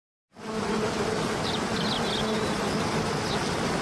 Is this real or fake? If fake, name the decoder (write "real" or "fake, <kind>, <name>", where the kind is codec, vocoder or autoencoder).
real